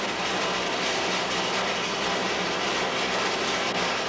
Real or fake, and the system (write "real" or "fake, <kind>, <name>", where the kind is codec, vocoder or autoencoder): real